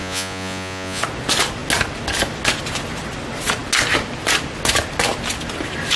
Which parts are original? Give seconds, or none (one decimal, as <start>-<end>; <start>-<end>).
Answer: 1.0-6.0